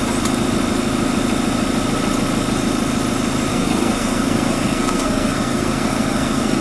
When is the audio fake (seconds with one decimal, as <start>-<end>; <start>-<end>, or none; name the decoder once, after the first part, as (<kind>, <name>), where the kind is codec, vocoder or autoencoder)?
3.5-6.6 (codec, SNAC)